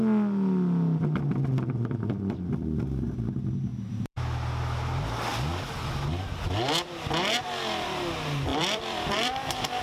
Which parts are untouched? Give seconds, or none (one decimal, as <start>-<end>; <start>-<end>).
0.0-3.7; 4.2-8.5